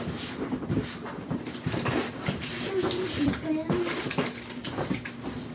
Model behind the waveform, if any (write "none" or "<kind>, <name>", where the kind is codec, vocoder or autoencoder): vocoder, BigVGAN v2